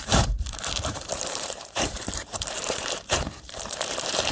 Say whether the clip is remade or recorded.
remade